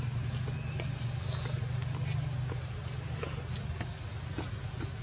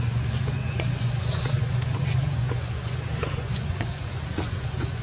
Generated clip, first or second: second